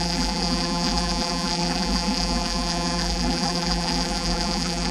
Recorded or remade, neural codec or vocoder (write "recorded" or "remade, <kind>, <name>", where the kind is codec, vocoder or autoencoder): remade, vocoder, BigVGAN v2